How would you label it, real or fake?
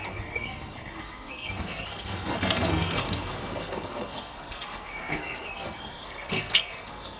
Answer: fake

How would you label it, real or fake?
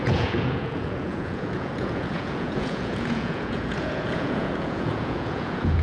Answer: fake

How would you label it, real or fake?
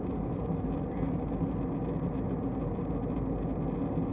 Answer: real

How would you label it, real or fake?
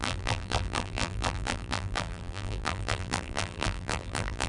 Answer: fake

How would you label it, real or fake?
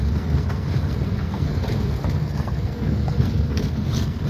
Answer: fake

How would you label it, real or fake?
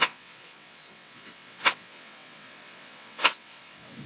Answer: fake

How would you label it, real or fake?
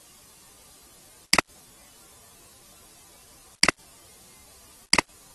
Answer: real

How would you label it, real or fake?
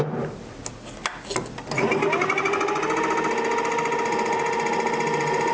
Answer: real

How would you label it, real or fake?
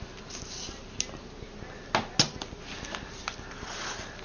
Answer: real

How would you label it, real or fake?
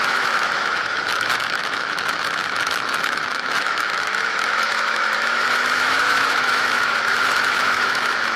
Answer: fake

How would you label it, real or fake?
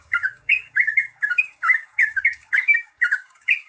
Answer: fake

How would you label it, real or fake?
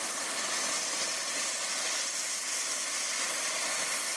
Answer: real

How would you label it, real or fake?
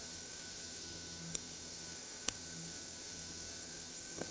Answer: fake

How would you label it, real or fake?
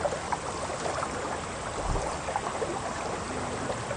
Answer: real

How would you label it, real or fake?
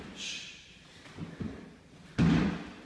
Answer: real